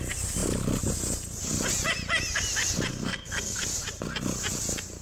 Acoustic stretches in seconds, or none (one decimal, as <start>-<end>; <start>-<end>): 0.0-2.9; 3.6-5.0